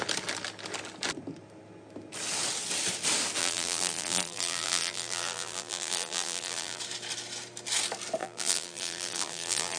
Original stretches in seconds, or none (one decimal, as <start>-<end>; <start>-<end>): 0.0-3.4; 6.8-8.2